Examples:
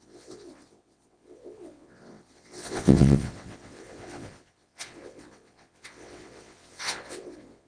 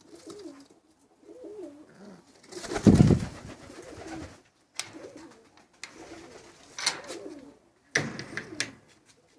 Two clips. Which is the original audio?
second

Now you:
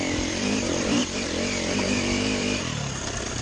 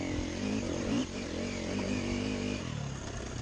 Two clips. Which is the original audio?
second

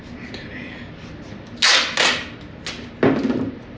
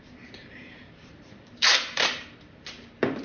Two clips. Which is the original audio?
first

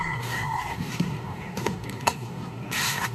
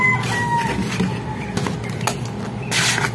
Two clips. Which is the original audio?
second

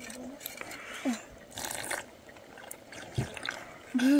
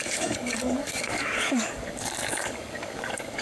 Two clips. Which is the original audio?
first